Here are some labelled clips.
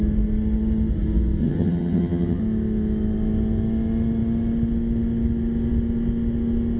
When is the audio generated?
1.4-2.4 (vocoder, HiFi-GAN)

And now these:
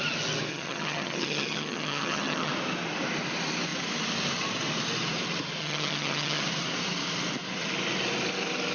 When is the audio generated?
0.5-2.5 (vocoder, HiFi-GAN); 5.6-6.4

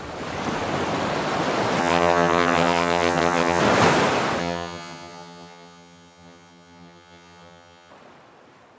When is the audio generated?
1.8-3.6 (vocoder, HiFi-GAN); 4.4-7.9

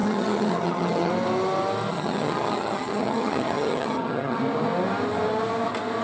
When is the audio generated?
0.0-1.1 (vocoder, HiFi-GAN); 1.9-4.4

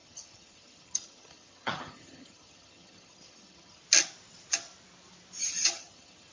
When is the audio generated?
0.0-3.8 (vocoder, HiFi-GAN); 5.4-6.3

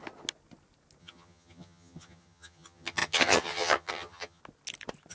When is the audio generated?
1.0-4.4 (vocoder, HiFi-GAN)

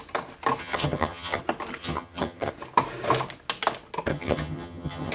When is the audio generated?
0.6-1.4 (vocoder, HiFi-GAN); 1.8-2.5; 4.1-5.1

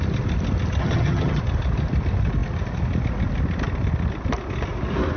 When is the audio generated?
0.8-1.4 (vocoder, HiFi-GAN)